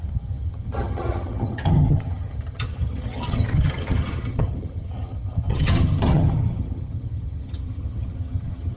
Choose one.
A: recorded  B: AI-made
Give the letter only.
B